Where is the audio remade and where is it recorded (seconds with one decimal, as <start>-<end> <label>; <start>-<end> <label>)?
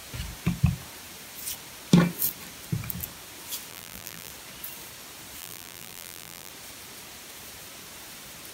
0.0-3.7 recorded; 3.7-4.3 remade; 4.3-5.4 recorded; 5.4-6.5 remade; 6.5-8.5 recorded